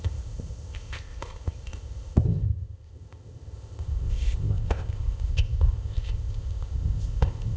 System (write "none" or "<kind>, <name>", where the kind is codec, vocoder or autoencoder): codec, ZipCodec